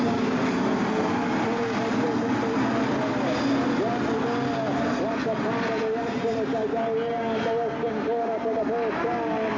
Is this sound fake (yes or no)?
no